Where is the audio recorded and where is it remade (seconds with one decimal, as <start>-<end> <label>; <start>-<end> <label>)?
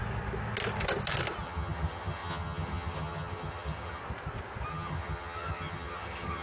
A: 0.0-1.4 recorded; 1.4-4.0 remade; 4.0-4.7 recorded; 4.7-6.4 remade